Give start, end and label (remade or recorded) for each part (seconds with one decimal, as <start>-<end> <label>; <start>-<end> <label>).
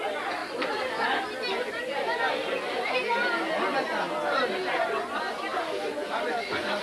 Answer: 0.0-6.8 recorded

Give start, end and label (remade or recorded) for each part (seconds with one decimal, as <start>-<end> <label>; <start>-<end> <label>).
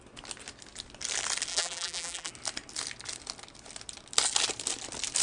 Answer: 0.0-1.5 recorded; 1.5-2.3 remade; 2.3-5.2 recorded